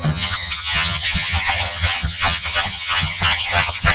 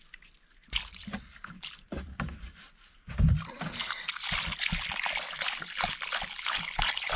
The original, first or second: second